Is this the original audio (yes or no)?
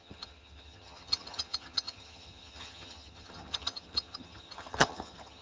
no